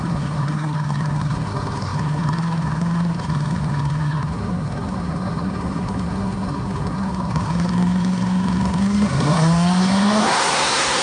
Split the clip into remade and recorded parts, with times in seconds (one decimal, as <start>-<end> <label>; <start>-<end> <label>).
0.0-11.0 remade